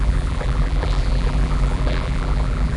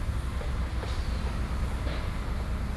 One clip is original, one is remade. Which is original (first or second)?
second